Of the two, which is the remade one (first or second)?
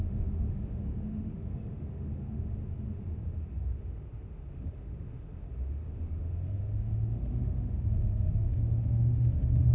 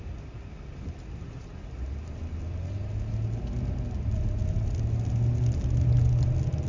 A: first